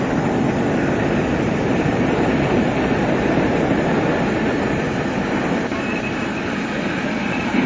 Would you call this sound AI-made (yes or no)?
no